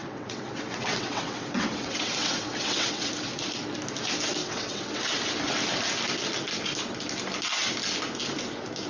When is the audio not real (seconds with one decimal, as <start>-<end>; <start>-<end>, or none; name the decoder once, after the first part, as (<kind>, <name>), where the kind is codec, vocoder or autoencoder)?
0.0-3.1 (vocoder, WaveNeXt); 4.4-5.0